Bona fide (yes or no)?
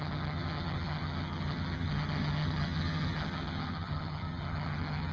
no